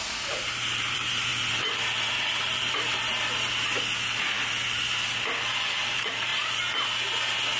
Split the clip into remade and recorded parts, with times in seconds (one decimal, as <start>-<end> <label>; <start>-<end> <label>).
0.0-1.3 remade; 1.3-2.1 recorded; 2.1-3.1 remade; 3.1-5.8 recorded; 5.8-6.3 remade; 6.3-7.6 recorded